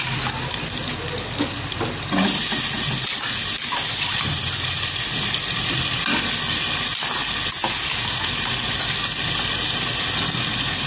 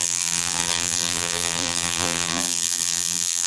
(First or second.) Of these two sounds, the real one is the first